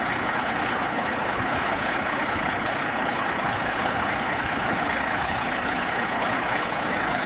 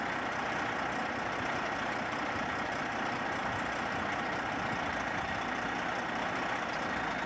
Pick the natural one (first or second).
second